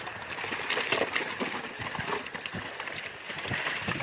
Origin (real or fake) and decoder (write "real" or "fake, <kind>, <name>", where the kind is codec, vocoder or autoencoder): real